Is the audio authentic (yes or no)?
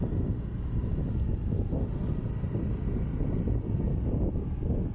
yes